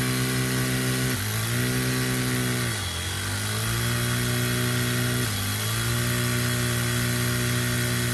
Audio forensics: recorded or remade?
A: recorded